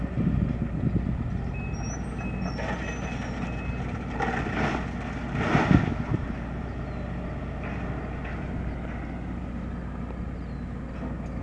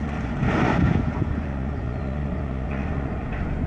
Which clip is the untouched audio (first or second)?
first